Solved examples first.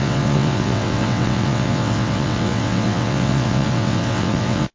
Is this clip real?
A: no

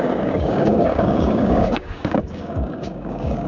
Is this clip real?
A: no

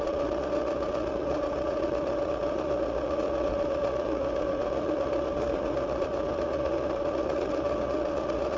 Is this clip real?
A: no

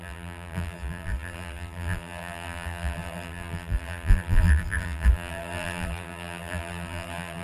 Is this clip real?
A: no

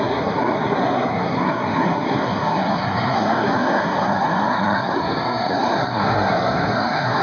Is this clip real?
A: no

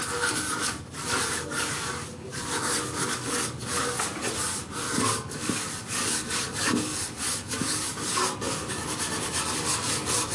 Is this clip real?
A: no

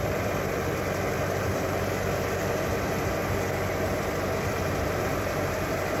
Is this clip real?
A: no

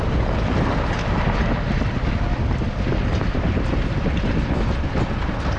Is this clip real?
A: yes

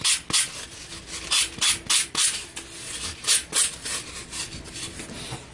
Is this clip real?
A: yes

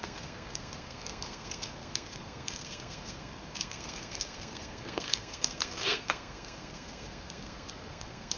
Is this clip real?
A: no